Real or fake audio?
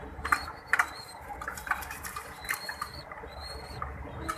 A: real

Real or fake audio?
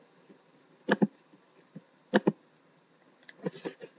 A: real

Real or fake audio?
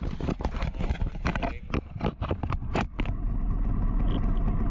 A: real